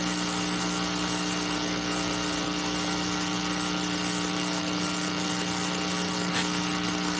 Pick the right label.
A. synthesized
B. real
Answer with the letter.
A